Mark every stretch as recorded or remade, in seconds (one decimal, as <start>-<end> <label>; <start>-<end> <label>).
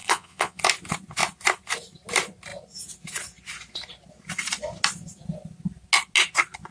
0.0-0.6 remade; 0.6-6.7 recorded